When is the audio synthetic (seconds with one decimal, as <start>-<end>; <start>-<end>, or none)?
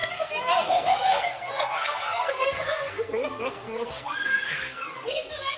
0.0-5.6